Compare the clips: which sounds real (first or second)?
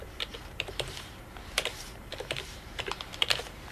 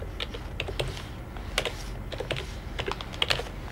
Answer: second